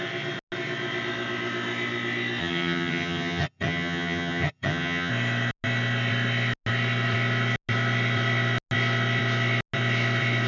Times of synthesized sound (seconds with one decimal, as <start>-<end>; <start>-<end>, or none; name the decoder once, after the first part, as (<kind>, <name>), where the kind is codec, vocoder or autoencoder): 2.4-5.1 (vocoder, HiFi-GAN)